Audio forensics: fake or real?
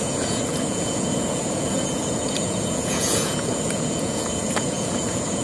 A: fake